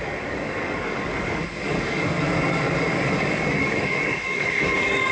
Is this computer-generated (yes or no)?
yes